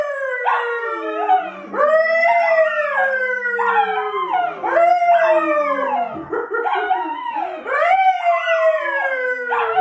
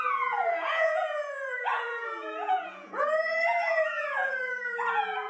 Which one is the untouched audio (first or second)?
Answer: first